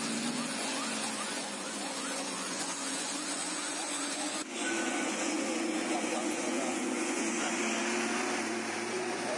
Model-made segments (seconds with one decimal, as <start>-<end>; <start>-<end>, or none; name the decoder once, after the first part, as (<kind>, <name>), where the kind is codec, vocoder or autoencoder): 0.0-7.6 (vocoder, Vocos); 8.9-9.4